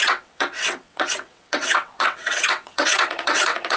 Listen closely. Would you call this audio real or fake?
fake